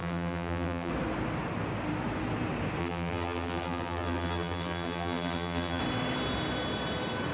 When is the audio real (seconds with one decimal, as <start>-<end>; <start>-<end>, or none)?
0.9-2.8; 5.8-7.3